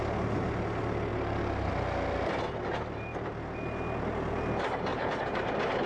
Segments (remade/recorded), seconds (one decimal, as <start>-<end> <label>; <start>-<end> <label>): 0.0-1.1 recorded; 1.1-1.7 remade; 1.7-4.9 recorded; 4.9-5.5 remade; 5.5-5.9 recorded